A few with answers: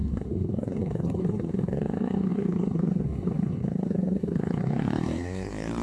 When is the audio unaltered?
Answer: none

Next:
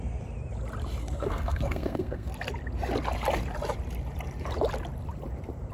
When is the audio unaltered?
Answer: 0.0-1.0; 2.3-5.7

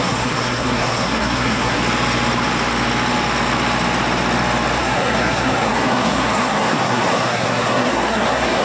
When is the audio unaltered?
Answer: 1.8-4.8

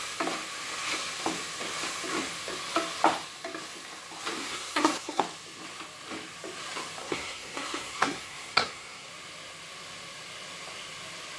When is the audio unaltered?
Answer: 0.0-4.4; 5.2-7.0; 9.1-11.4